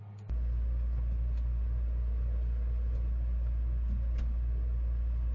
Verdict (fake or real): real